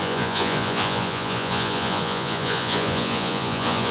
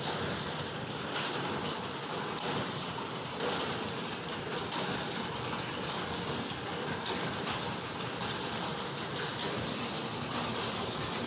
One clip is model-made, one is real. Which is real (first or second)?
second